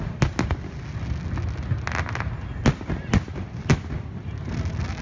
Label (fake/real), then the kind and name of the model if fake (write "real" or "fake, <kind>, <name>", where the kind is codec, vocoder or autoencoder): real